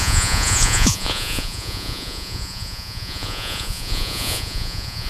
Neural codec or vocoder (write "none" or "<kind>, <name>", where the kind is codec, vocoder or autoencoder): vocoder, Vocos